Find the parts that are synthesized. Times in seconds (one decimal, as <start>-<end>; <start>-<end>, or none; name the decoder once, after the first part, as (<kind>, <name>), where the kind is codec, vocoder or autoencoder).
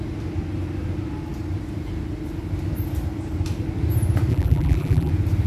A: 4.3-5.1 (vocoder, BigVGAN v2)